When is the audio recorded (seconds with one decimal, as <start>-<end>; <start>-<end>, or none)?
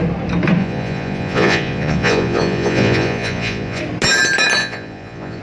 0.0-0.6; 3.8-4.6